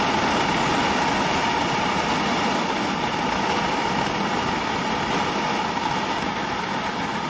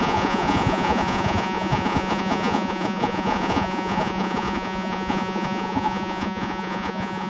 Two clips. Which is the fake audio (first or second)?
second